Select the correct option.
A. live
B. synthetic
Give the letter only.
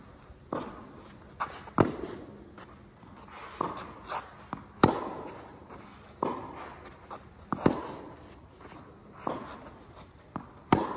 A